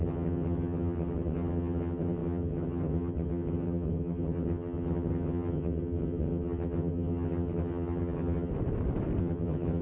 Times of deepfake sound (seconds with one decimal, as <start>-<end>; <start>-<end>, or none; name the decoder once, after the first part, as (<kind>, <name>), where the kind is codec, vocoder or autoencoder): 0.0-8.5 (vocoder, HiFi-GAN); 9.2-9.8